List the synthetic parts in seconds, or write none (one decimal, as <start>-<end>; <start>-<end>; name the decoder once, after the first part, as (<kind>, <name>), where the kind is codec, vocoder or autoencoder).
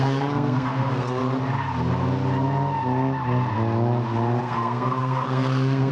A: 0.0-1.2 (codec, SNAC); 4.4-5.9